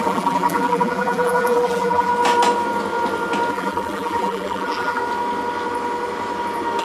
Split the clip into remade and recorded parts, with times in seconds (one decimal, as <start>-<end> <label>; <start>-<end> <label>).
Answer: 0.0-2.1 remade; 2.1-3.5 recorded; 3.5-5.0 remade; 5.0-6.8 recorded